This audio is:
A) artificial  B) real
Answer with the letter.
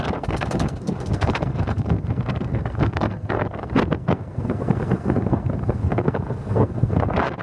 A